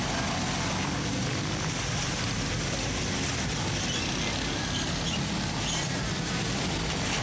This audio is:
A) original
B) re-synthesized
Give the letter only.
A